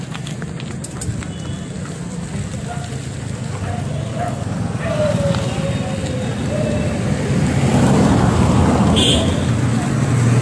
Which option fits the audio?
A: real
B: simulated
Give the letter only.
A